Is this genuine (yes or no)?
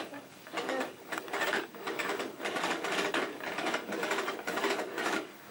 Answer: no